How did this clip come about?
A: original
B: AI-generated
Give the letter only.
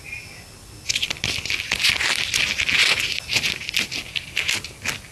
A